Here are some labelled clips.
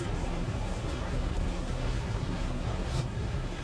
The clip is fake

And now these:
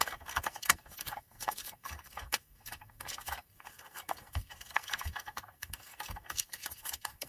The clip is fake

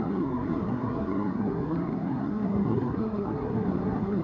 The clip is fake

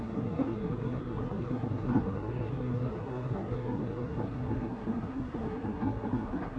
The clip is fake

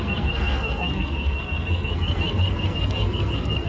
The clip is fake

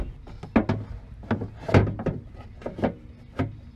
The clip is real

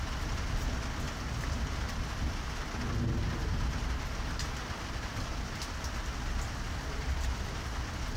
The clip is real